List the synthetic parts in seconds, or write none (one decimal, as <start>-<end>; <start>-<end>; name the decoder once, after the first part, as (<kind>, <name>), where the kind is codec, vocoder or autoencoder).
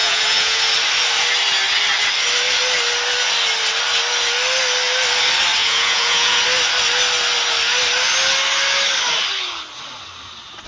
0.0-0.6 (vocoder, Vocos); 5.6-6.4